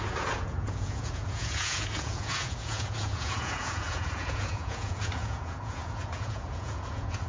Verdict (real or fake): fake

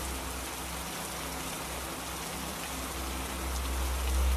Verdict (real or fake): real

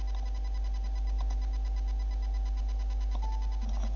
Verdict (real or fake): real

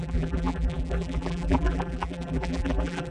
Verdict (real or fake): fake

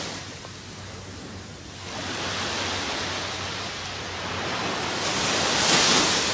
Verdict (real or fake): real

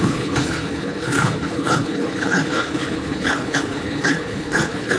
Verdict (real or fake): fake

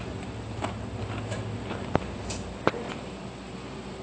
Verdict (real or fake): real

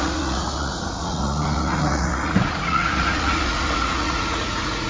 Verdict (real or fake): fake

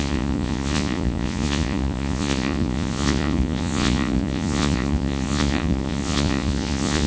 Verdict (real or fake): fake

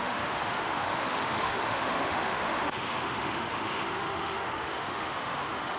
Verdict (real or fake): fake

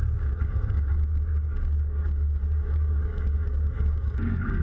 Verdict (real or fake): fake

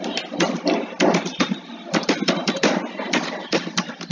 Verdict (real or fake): real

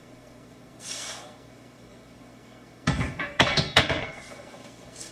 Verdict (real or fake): fake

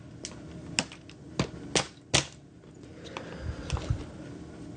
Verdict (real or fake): real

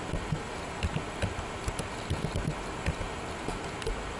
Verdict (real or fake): real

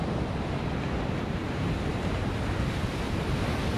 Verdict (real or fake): real